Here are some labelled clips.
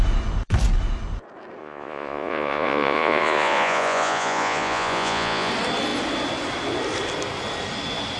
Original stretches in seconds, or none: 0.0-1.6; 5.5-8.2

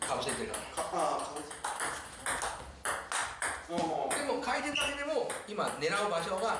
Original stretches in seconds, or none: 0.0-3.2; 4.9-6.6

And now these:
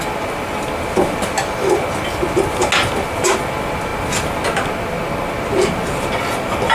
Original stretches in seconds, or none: 0.0-6.7

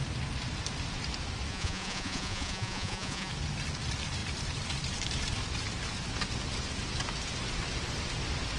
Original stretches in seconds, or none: 0.0-1.5; 3.3-8.6

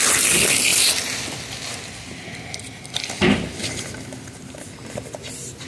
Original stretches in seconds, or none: 0.0-5.7

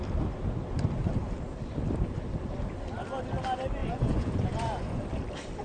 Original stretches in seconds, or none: 0.0-3.8; 5.0-5.6